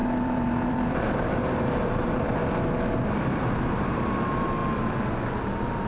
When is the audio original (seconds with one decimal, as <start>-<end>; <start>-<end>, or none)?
2.4-3.7; 4.6-5.4